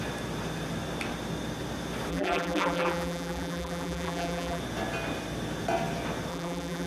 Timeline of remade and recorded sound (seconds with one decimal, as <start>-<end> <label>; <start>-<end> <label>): 0.0-2.1 recorded; 2.1-4.6 remade; 4.6-6.3 recorded; 6.3-6.9 remade